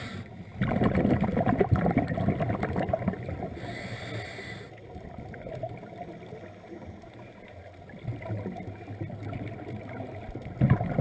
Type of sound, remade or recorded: recorded